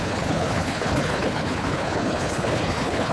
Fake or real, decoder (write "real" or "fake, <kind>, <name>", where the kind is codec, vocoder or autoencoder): fake, codec, HILCodec